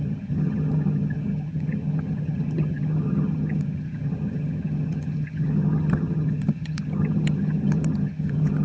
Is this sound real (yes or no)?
no